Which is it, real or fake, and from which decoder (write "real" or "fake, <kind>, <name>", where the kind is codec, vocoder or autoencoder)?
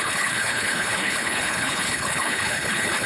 fake, codec, HILCodec